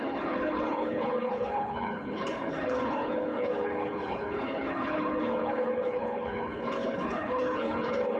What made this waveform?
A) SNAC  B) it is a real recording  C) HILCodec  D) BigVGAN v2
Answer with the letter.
C